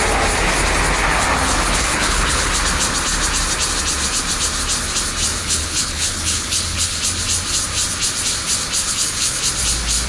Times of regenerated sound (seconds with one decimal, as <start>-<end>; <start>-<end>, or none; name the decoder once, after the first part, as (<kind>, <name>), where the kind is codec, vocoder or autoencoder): 1.8-2.5 (codec, HILCodec); 5.4-7.0; 8.8-9.4